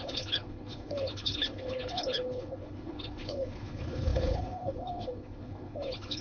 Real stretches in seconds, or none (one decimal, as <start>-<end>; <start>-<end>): none